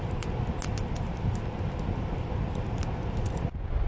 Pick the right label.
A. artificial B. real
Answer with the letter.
B